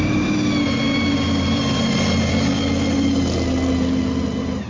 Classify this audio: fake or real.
real